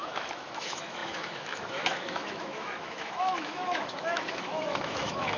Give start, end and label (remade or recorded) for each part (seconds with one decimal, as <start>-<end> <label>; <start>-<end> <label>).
0.0-5.4 remade